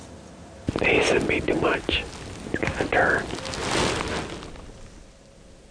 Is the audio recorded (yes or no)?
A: yes